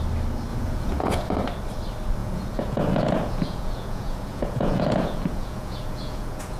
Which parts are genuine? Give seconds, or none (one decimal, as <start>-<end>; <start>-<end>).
0.0-0.5; 1.3-2.2